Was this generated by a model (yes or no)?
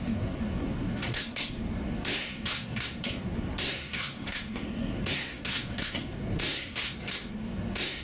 yes